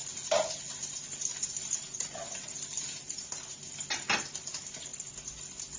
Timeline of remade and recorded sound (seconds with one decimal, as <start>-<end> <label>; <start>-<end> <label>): 0.0-5.8 recorded